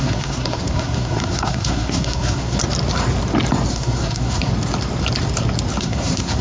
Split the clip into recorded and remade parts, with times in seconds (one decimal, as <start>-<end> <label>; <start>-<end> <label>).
0.0-2.6 remade; 2.6-3.7 recorded; 3.7-4.5 remade; 4.5-5.8 recorded; 5.8-6.4 remade